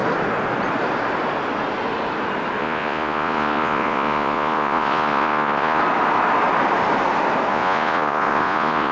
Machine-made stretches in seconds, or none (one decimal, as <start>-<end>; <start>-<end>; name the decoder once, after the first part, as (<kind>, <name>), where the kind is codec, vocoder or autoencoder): 2.6-5.8 (vocoder, Vocos); 7.5-8.9